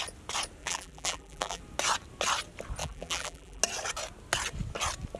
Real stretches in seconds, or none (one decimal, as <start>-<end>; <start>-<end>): 0.0-0.6; 1.6-2.8; 3.6-5.2